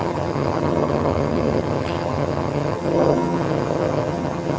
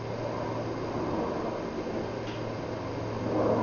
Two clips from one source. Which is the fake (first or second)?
first